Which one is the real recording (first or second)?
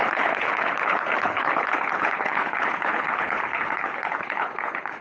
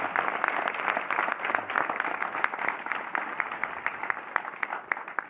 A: second